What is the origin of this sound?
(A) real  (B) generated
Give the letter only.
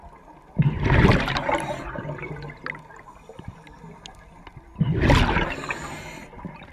A